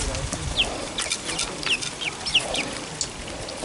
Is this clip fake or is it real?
real